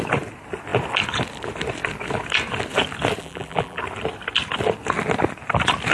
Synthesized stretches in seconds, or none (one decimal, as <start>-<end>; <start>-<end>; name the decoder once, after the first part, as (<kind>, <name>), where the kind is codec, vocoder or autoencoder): 3.2-3.8 (vocoder, BigVGAN v2)